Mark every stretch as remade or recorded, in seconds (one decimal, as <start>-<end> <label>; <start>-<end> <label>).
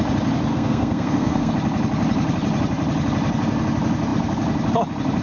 0.0-0.5 recorded; 0.5-1.5 remade; 1.5-5.2 recorded